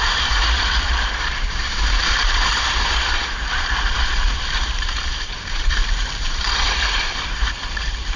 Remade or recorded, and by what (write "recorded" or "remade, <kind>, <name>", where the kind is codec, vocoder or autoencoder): remade, vocoder, BigVGAN v2